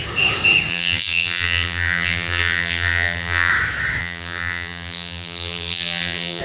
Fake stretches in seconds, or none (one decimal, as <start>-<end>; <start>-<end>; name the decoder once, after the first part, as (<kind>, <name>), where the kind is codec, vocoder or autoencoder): 0.7-3.5 (vocoder, BigVGAN v2); 4.0-6.4